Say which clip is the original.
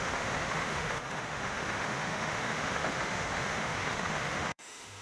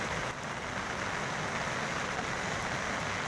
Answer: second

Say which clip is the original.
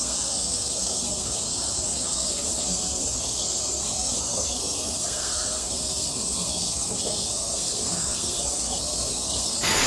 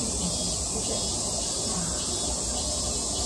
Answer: second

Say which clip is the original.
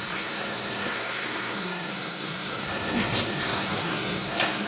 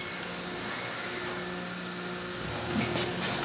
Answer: second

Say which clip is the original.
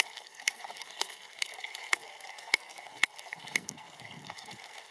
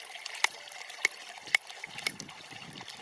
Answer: second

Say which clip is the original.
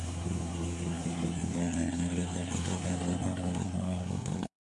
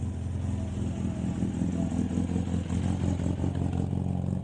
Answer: second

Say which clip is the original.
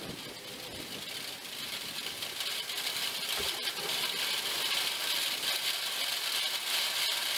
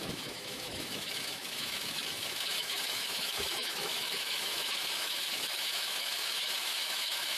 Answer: first